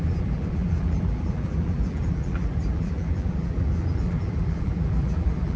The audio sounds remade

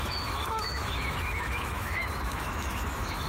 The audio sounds remade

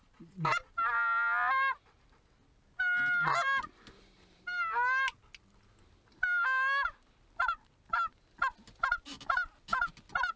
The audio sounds recorded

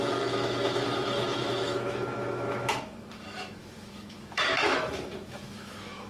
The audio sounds remade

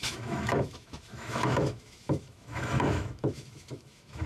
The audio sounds remade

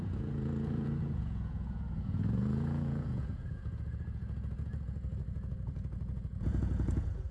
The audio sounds remade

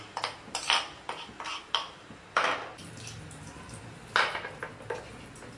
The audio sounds recorded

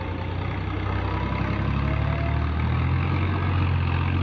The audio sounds recorded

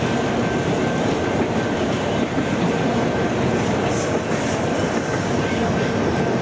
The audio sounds recorded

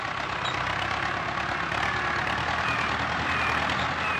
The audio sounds recorded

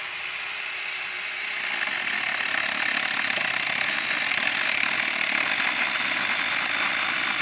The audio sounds recorded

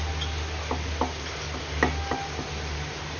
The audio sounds recorded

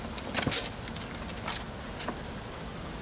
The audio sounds recorded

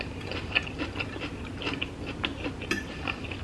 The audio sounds recorded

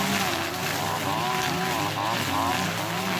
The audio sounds recorded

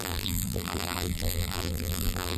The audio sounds remade